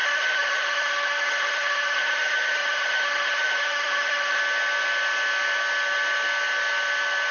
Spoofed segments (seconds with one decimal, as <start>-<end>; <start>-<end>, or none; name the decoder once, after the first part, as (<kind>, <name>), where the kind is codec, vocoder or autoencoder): 0.0-4.4 (autoencoder, DAC-VAE)

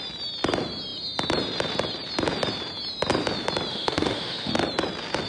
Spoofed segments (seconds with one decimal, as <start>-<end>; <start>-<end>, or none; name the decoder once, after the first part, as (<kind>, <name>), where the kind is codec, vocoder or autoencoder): 3.7-4.5 (autoencoder, DAC-VAE)

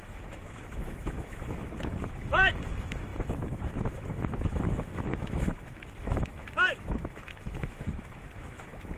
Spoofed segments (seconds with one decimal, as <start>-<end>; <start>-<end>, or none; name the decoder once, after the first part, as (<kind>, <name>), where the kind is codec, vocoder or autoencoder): 0.0-9.0 (autoencoder, DAC-VAE)

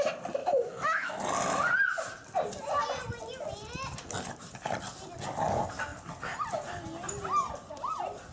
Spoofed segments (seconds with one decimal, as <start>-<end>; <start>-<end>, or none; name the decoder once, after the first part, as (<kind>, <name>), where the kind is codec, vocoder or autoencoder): 0.4-1.2 (autoencoder, DAC-VAE)